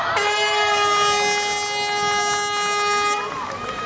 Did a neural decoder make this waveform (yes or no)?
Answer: no